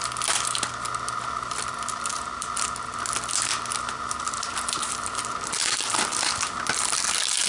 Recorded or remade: recorded